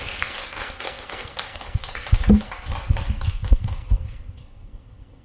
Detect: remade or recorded remade